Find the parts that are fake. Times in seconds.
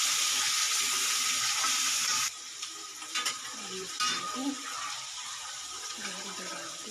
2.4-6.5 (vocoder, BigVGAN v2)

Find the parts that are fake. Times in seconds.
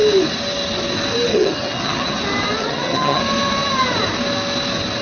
1.3-2.2 (vocoder, HiFi-GAN); 2.6-3.2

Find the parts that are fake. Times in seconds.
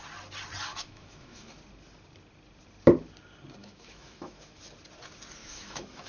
0.7-1.5 (autoencoder, DAC-VAE); 3.6-4.6; 5.4-6.1